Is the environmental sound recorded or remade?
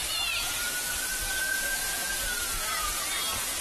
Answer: remade